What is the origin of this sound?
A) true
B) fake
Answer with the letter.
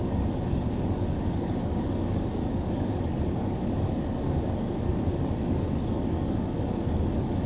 B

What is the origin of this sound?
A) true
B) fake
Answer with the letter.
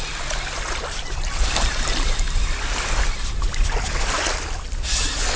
A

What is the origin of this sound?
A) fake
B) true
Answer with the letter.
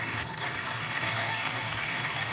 A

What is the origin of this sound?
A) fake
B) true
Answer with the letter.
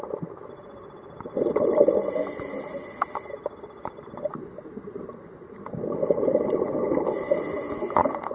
B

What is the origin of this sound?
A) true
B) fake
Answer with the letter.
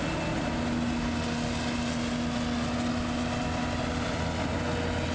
A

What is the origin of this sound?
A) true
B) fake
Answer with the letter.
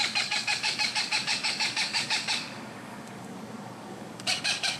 B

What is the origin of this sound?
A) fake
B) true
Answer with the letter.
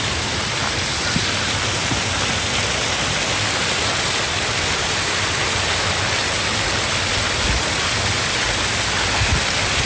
B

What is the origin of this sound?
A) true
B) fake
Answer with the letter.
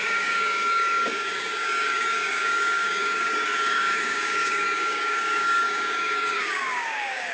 B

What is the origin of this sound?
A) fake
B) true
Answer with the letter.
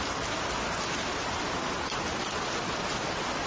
B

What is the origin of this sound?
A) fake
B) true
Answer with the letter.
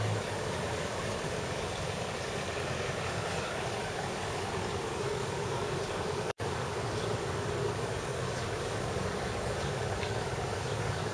A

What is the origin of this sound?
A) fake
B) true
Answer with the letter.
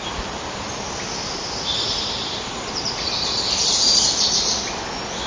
B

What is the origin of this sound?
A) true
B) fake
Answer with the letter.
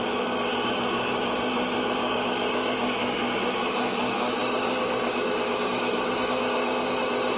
B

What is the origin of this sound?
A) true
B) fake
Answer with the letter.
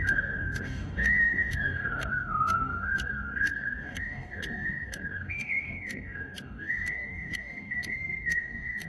B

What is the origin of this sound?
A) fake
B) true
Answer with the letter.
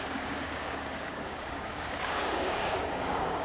A